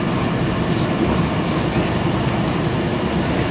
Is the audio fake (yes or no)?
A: no